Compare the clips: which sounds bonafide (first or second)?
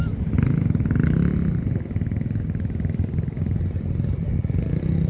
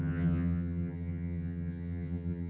first